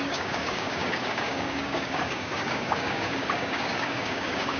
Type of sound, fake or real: fake